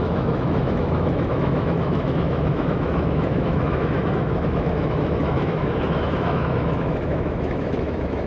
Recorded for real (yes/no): no